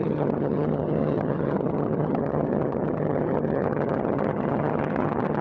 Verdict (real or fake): fake